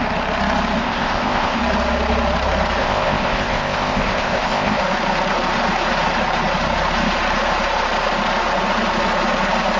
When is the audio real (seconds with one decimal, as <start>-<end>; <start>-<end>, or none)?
0.0-0.8; 1.6-2.8; 4.8-9.8